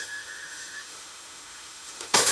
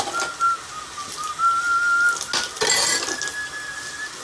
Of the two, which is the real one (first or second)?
second